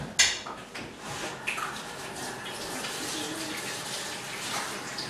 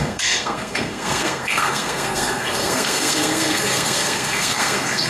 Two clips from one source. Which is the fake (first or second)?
second